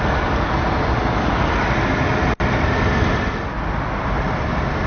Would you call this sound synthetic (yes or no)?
no